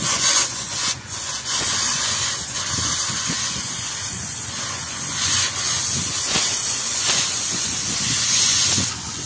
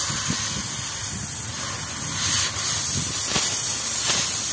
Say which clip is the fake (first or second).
first